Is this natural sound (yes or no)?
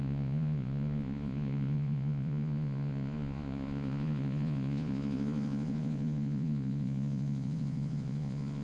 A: no